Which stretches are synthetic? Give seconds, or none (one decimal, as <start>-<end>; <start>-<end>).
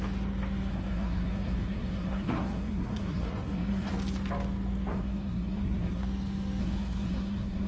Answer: 0.7-3.9; 4.9-6.0; 6.6-7.7